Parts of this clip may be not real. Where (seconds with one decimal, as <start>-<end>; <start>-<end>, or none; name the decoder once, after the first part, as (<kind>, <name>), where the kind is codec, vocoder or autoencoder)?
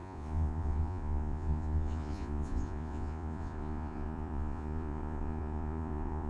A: 0.0-6.3 (vocoder, Vocos)